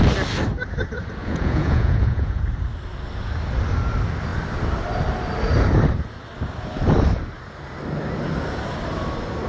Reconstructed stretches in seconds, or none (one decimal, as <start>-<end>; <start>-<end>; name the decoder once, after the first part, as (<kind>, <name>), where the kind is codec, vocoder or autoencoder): 1.2-2.4 (vocoder, Vocos)